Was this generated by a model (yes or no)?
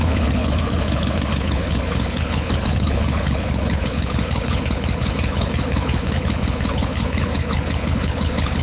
yes